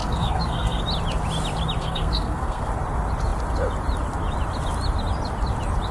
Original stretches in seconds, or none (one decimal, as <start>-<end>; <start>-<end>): 0.8-1.8; 2.7-5.9